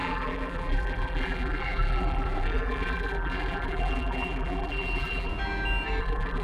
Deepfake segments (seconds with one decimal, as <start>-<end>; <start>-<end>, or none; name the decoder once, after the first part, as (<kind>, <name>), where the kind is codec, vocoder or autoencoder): 0.0-5.3 (vocoder, BigVGAN v2); 6.0-6.4